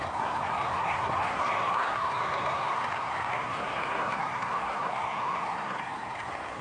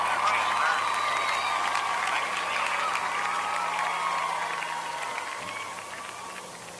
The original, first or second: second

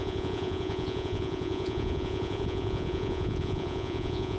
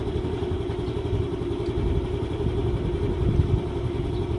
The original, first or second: second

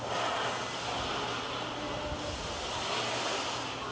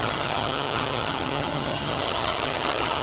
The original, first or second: first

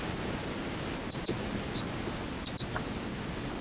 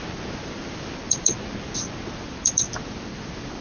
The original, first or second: first